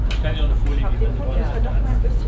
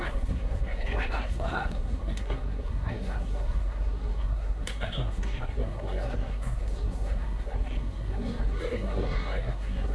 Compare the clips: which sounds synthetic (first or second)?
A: second